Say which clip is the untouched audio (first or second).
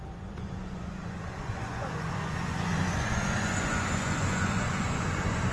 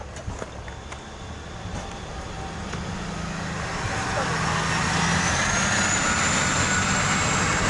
second